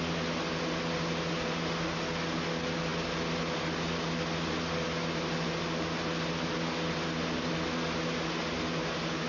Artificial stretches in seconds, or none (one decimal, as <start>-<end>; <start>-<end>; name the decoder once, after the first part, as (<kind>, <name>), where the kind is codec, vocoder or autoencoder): none